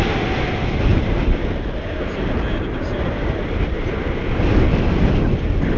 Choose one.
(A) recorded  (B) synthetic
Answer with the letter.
A